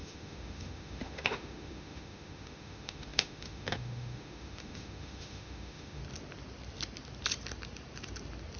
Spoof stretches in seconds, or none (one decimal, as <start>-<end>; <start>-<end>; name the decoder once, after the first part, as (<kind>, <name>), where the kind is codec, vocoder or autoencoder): 0.0-6.0 (autoencoder, DAC-VAE)